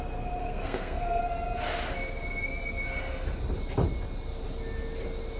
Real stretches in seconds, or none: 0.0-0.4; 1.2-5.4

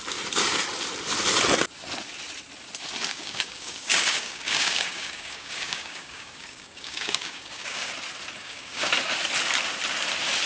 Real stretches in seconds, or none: 0.0-3.1; 7.9-8.4; 8.9-10.5

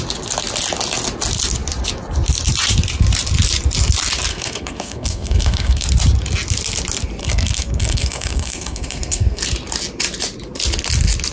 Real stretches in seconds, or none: 0.0-4.3; 5.9-7.2; 9.4-11.3

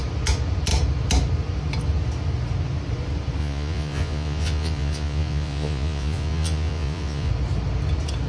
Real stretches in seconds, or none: 0.0-3.4; 7.3-8.3

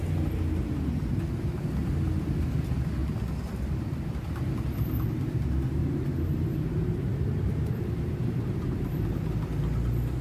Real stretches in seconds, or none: 0.0-5.8; 9.3-10.2

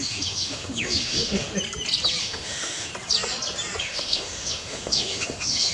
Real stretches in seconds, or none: 1.5-2.2; 2.9-3.8

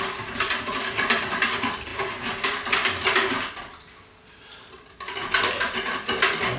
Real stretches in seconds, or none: 0.0-6.6